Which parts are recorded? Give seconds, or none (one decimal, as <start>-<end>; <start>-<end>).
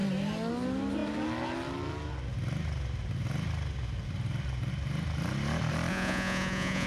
0.0-5.9